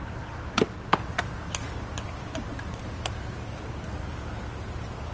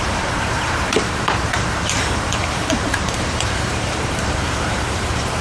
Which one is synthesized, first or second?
second